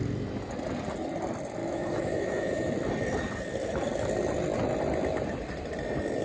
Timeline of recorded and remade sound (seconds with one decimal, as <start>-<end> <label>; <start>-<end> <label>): 0.0-1.6 recorded; 1.6-2.7 remade; 2.7-6.2 recorded